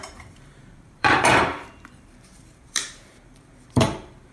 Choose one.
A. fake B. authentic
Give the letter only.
A